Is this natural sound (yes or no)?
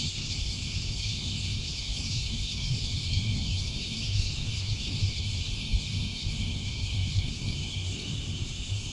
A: no